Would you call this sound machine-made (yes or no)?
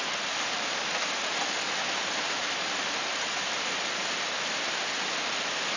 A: no